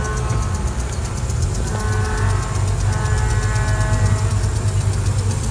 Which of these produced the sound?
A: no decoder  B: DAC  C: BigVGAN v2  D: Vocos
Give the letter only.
A